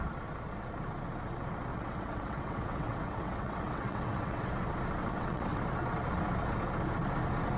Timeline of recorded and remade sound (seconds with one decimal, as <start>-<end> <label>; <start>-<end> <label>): 0.0-1.7 recorded; 1.7-4.5 remade; 4.5-5.0 recorded; 5.0-5.6 remade; 5.6-7.6 recorded